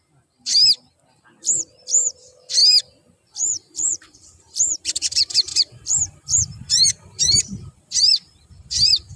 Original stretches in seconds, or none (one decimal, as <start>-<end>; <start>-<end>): 2.6-3.3